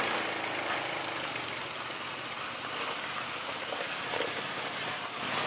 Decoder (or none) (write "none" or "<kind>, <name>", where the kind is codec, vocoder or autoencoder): none